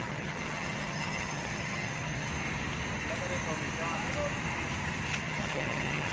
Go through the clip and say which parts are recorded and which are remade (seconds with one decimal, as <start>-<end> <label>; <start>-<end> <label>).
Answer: 0.0-2.3 remade; 2.3-5.2 recorded; 5.2-6.1 remade